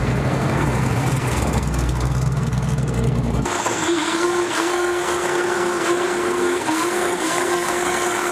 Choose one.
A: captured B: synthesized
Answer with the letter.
B